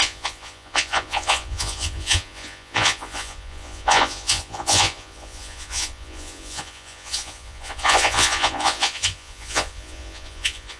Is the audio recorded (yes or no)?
no